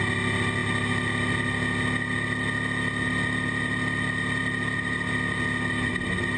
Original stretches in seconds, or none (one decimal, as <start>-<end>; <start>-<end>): 0.0-6.4